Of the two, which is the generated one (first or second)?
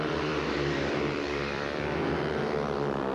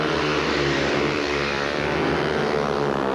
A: first